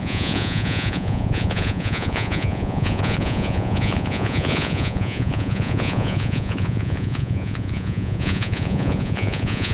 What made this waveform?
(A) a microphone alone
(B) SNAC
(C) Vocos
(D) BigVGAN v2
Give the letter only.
C